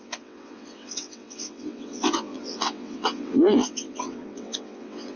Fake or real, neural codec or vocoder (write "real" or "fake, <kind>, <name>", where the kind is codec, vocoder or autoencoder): fake, vocoder, WaveNeXt